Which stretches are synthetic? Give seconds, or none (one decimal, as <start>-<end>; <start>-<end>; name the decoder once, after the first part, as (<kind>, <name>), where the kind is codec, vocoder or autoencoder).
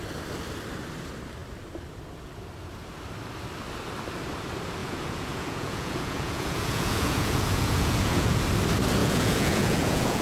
4.8-8.4 (vocoder, Vocos); 9.0-10.2